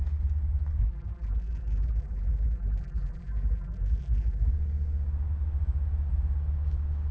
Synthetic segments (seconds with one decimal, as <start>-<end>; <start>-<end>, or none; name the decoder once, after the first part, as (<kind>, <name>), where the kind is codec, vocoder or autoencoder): 0.8-4.5 (vocoder, BigVGAN v2)